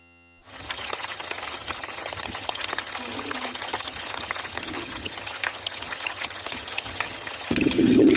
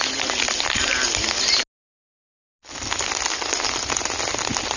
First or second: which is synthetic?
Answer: first